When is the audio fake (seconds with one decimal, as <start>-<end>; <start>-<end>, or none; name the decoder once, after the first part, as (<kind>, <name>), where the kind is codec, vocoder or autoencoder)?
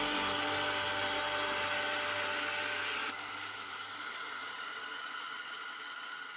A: 3.0-4.9 (vocoder, BigVGAN v2)